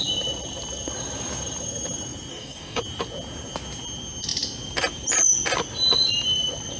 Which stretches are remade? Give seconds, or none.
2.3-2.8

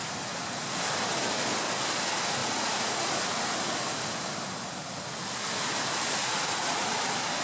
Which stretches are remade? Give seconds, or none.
2.4-3.1; 6.2-7.0

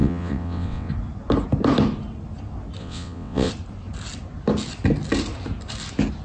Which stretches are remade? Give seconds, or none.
0.0-0.9; 2.8-3.5

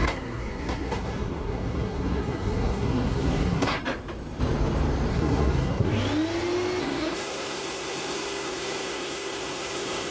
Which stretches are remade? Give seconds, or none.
0.0-3.8; 5.1-5.9; 6.8-10.1

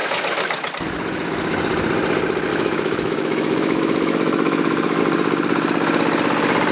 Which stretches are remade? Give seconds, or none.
0.0-0.7; 2.5-5.0